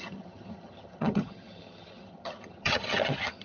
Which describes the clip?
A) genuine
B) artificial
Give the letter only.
B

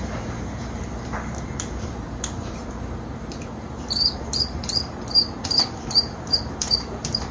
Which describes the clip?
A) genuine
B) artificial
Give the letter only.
B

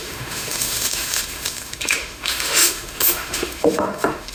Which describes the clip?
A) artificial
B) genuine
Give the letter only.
A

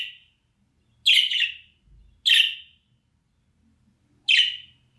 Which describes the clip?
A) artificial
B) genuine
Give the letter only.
B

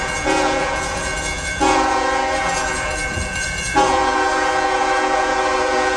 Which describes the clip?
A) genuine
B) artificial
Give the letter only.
B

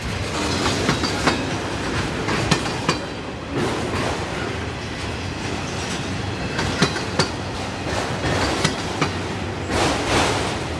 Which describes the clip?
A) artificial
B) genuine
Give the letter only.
B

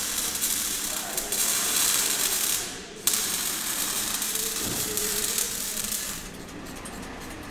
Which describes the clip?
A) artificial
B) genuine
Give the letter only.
A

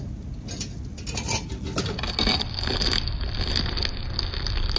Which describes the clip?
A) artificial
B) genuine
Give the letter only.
B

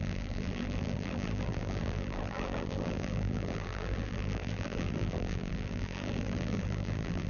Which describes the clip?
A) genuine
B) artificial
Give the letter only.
B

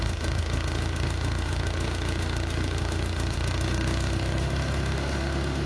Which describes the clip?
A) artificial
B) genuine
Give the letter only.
A